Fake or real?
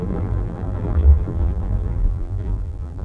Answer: fake